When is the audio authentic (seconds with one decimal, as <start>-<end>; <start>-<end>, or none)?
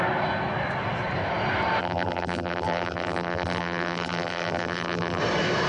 0.0-1.8; 5.2-5.7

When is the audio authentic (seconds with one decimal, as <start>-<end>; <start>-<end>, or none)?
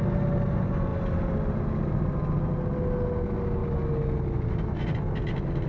0.0-5.7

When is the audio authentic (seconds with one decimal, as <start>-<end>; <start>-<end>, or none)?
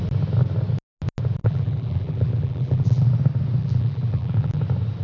0.0-1.4; 3.1-3.6; 4.6-5.0